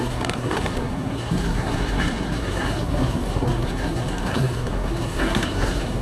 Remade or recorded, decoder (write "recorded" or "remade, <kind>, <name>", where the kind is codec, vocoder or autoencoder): remade, codec, SNAC